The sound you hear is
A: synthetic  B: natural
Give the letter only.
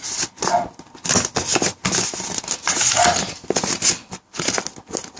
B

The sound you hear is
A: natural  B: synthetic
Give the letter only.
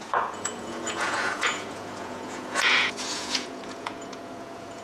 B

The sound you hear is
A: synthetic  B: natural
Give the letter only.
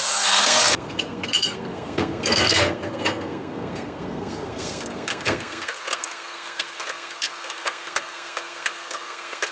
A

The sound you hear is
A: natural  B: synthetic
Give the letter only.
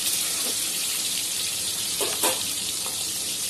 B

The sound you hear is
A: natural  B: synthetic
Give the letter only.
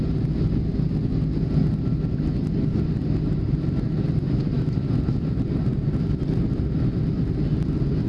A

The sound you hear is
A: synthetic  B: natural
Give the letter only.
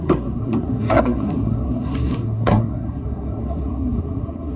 A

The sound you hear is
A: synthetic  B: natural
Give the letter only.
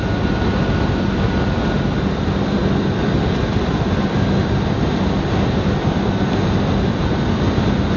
B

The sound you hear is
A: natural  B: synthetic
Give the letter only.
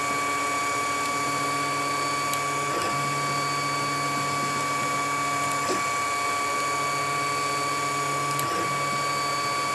A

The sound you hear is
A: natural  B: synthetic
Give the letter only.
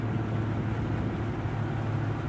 A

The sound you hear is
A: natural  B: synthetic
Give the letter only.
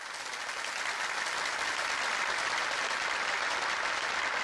A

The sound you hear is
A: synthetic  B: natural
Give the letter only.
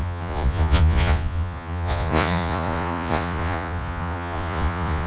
A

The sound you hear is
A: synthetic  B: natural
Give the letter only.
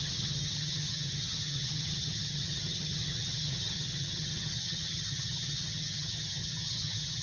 A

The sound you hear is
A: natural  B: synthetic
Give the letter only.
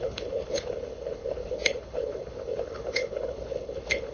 B